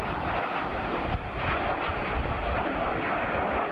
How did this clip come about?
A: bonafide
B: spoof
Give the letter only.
A